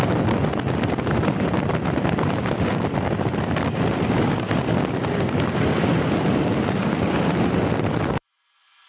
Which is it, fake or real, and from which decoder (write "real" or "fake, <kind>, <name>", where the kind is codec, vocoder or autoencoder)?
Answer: real